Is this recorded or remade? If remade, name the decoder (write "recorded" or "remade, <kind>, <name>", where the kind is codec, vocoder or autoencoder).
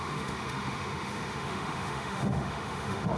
remade, autoencoder, DAC-VAE